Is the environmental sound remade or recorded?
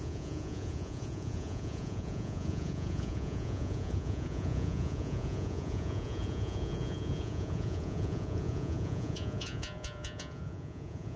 remade